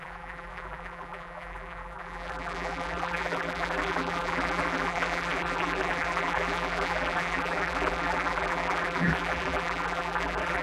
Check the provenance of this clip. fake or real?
fake